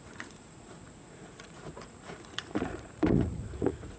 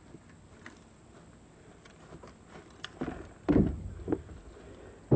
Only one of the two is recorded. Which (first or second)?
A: second